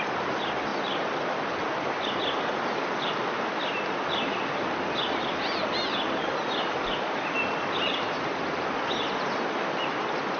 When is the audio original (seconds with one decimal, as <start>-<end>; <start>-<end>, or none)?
0.0-10.4